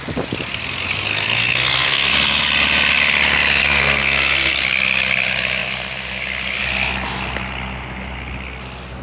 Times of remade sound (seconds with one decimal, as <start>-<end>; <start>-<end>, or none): 1.1-2.1; 3.6-4.5